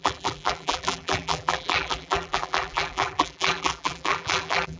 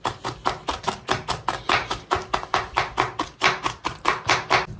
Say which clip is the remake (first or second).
first